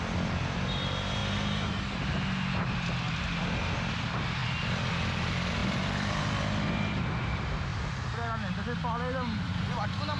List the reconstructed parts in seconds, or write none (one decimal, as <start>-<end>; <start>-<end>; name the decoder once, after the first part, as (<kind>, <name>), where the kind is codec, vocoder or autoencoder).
1.2-2.1 (vocoder, BigVGAN v2); 5.6-7.0